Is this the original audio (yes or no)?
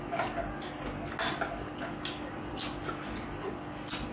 yes